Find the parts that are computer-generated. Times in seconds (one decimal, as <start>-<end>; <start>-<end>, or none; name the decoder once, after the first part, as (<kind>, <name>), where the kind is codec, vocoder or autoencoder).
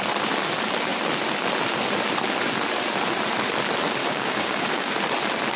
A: 4.0-4.9 (codec, DAC)